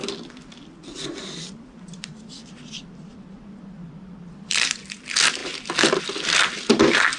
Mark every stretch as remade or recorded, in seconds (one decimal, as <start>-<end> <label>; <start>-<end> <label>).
0.0-7.2 remade